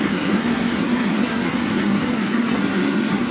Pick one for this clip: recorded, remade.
remade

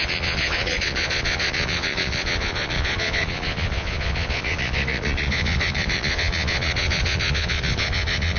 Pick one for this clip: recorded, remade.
remade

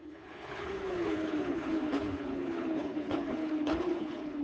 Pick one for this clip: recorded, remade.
remade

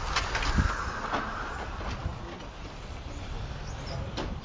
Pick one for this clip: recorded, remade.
recorded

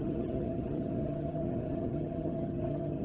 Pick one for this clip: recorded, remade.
remade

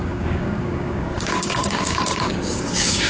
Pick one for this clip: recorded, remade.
remade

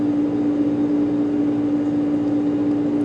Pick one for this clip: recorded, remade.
recorded